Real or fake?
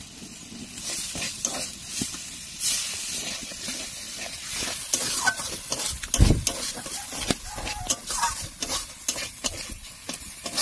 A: real